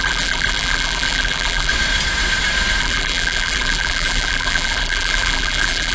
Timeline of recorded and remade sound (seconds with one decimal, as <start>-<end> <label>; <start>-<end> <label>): 0.0-1.7 remade; 1.7-2.8 recorded; 2.8-5.9 remade